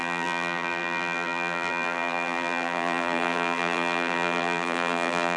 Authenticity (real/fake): fake